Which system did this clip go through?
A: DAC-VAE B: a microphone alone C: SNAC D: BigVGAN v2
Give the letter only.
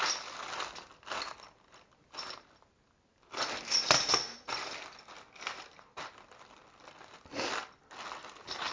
B